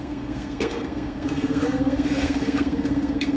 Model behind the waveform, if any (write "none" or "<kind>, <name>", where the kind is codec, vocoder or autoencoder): codec, SNAC